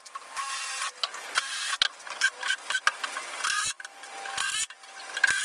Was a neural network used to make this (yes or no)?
no